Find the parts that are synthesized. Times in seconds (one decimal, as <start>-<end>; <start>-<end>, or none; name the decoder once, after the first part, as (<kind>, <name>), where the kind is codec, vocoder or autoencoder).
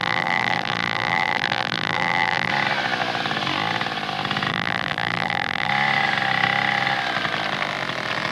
0.0-2.5 (vocoder, BigVGAN v2); 4.5-5.7